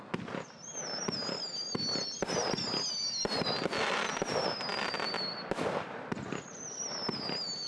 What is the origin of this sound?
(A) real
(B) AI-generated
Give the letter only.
A